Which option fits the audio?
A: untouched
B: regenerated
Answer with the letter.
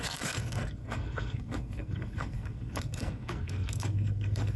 B